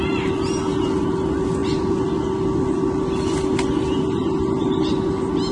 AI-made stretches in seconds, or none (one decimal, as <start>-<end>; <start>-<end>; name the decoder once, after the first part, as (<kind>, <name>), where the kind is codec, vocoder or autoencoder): none

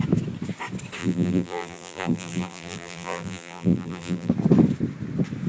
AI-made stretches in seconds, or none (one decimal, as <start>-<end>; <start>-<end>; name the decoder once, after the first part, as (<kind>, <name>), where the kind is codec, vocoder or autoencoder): 1.0-4.3 (vocoder, BigVGAN v2)

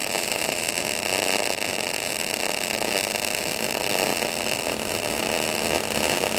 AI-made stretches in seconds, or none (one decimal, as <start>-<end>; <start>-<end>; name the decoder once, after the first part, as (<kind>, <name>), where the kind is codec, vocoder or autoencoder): 0.0-0.7 (vocoder, BigVGAN v2)

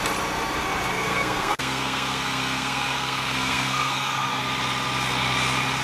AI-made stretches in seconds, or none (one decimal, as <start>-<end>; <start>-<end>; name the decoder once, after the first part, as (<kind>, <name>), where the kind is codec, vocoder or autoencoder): 0.9-4.4 (codec, SNAC)

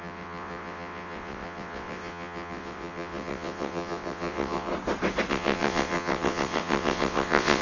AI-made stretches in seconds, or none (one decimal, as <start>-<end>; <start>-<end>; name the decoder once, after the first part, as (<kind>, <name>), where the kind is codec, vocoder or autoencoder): 0.0-4.7 (vocoder, WaveNeXt); 5.3-7.6

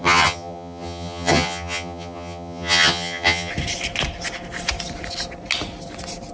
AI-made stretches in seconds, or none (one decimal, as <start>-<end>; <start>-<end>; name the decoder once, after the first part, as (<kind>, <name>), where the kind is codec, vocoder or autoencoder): 0.0-3.5 (vocoder, HiFi-GAN)

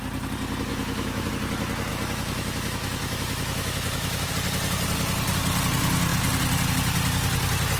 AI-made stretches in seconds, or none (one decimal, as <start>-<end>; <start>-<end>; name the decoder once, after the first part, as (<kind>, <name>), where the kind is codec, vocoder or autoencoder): 0.7-1.3 (autoencoder, DAC-VAE); 1.9-4.3